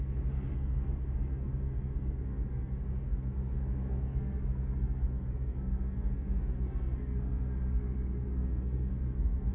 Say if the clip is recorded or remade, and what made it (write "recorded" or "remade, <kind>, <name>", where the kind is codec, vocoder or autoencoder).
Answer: remade, codec, SNAC